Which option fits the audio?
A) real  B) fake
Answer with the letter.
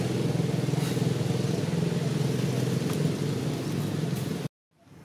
A